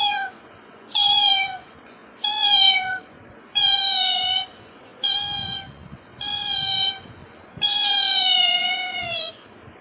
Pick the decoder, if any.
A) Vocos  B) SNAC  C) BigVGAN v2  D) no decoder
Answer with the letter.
A